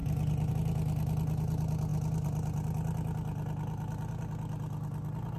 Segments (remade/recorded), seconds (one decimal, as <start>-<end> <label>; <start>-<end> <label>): 0.0-5.4 recorded